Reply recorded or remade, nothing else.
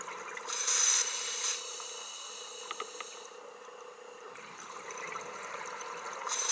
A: recorded